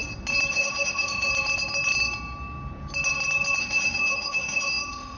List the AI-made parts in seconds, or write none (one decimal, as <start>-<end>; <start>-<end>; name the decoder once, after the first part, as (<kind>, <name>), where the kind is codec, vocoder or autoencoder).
0.5-1.3 (autoencoder, DAC-VAE); 3.6-5.2